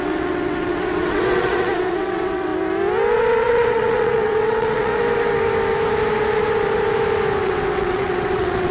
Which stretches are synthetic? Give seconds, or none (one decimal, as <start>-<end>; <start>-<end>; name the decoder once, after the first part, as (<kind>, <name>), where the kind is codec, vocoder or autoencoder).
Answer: 0.0-2.5 (vocoder, WaveNeXt); 3.4-4.9; 7.4-8.7